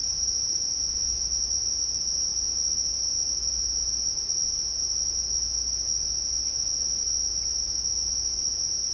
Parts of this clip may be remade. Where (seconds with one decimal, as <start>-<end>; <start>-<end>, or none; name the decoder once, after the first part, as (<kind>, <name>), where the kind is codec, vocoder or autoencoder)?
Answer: 0.0-0.7 (vocoder, BigVGAN v2)